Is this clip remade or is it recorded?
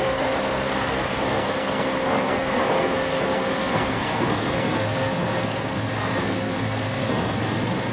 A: remade